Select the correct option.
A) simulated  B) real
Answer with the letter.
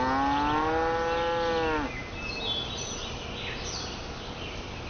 B